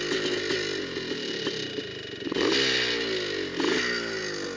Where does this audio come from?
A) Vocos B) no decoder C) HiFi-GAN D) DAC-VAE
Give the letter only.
B